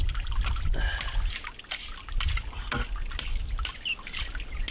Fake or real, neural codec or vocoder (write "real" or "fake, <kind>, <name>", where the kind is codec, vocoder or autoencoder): real